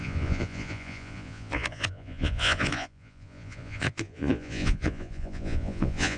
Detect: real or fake fake